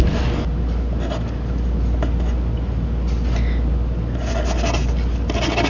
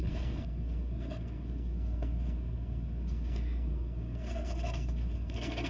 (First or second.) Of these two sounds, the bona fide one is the first